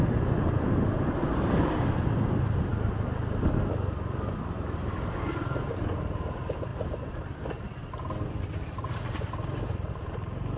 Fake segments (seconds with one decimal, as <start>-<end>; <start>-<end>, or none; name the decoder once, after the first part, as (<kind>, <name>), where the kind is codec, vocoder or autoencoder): none